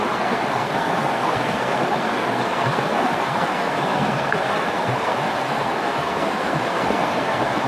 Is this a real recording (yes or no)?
no